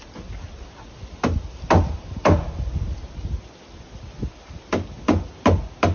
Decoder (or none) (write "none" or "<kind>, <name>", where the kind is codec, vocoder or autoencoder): none